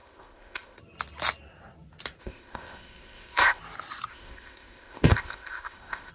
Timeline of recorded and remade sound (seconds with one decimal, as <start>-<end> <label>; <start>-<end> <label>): 0.0-0.8 remade; 0.8-2.2 recorded; 2.2-3.6 remade; 3.6-4.1 recorded; 4.1-6.1 remade